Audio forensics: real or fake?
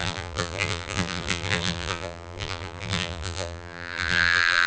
fake